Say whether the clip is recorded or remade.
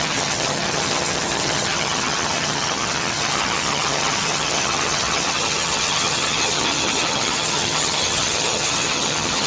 remade